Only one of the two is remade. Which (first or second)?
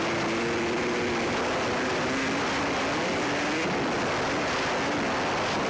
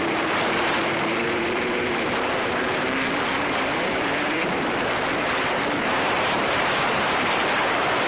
second